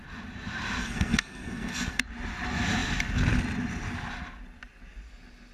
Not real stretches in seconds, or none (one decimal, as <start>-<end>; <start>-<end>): 0.8-2.0